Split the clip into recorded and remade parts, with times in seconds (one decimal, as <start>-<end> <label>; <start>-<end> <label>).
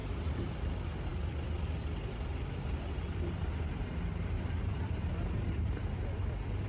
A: 0.0-0.5 remade; 0.5-3.5 recorded; 3.5-5.8 remade; 5.8-6.7 recorded